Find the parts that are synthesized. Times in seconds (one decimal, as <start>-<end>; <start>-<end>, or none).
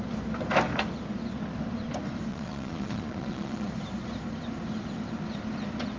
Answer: 2.3-3.7